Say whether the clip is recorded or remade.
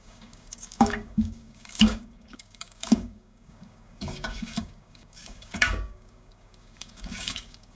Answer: remade